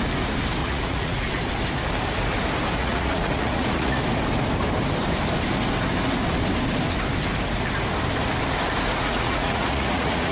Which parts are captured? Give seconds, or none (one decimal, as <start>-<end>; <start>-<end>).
0.0-0.6; 1.3-2.8; 4.0-9.0